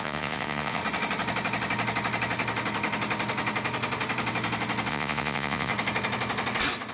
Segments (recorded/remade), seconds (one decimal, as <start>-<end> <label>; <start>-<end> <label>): 0.0-0.8 remade; 0.8-4.9 recorded; 4.9-5.7 remade; 5.7-6.9 recorded